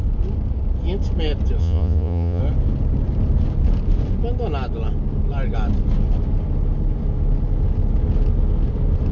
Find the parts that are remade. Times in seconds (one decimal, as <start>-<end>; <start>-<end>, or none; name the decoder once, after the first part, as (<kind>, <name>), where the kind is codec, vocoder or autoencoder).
1.6-2.4 (vocoder, Vocos)